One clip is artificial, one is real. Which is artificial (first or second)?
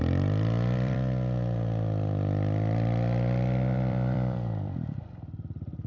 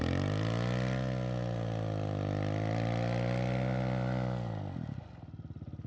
first